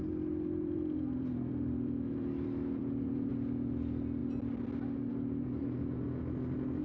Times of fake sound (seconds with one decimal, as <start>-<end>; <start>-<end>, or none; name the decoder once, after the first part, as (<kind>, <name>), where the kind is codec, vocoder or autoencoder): 0.0-3.3 (vocoder, BigVGAN v2)